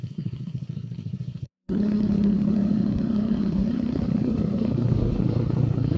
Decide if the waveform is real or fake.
fake